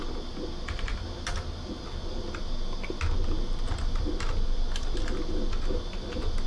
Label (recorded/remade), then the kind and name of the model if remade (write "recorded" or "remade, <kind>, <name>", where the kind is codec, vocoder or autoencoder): recorded